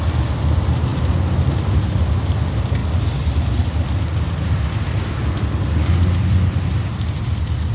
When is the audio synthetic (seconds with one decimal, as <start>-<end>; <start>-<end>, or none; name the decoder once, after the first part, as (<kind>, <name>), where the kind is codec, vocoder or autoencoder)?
2.8-3.4 (vocoder, BigVGAN v2)